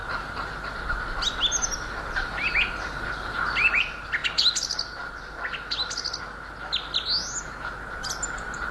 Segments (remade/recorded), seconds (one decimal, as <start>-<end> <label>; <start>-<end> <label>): 0.0-8.7 recorded